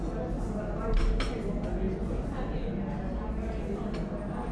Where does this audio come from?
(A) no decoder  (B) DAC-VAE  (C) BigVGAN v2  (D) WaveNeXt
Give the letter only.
A